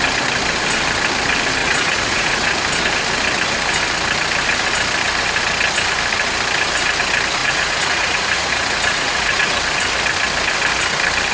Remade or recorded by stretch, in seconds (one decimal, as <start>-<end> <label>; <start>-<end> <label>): 0.0-1.6 recorded; 1.6-2.6 remade; 2.6-7.4 recorded; 7.4-9.6 remade; 9.6-11.3 recorded